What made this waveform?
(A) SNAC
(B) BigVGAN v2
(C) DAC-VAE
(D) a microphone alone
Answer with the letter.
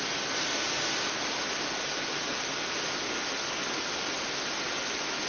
D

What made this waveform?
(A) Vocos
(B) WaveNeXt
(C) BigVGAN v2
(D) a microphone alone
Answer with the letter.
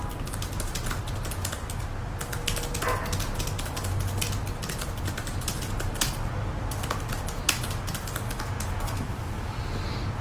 D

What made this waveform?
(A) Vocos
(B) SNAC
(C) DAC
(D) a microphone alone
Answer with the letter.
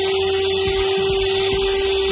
D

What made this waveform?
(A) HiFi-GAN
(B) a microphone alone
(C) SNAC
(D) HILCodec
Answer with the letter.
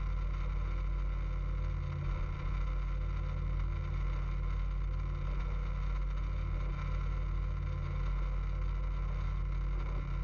B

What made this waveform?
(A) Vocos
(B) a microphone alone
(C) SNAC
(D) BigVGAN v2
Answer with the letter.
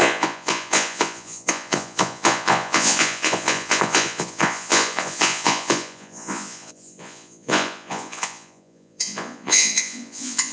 A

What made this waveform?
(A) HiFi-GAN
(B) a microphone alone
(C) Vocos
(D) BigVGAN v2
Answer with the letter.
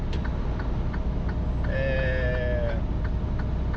B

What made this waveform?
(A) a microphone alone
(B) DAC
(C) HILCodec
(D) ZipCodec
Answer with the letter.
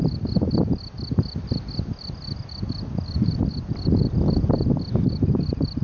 A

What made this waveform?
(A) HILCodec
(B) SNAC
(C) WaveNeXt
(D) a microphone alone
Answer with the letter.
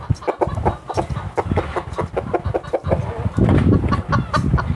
D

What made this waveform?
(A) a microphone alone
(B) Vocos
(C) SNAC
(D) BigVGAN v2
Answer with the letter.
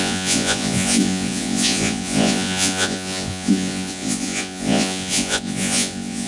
B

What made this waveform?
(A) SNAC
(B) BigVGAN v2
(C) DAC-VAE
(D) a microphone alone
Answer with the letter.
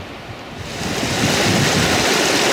D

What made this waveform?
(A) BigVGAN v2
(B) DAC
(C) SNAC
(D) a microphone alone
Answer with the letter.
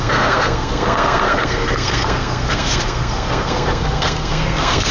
C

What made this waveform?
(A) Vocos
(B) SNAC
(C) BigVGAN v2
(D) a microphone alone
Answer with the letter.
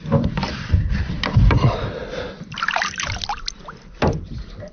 C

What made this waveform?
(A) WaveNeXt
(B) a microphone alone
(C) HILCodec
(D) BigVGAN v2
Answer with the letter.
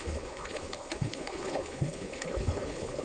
C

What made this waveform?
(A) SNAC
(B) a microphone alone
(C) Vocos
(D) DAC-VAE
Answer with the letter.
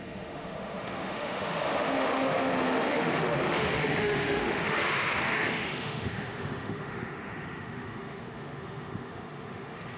D